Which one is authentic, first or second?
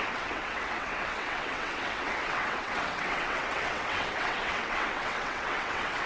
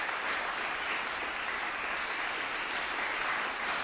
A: second